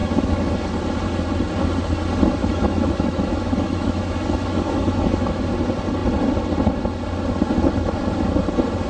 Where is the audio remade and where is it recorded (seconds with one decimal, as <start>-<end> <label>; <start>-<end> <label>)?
0.0-0.5 remade; 0.5-2.4 recorded; 2.4-5.4 remade; 5.4-8.9 recorded